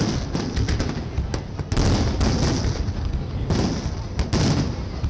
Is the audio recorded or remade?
recorded